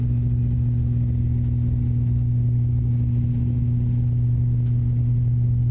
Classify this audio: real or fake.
real